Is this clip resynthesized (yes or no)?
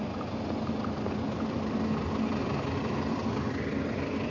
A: no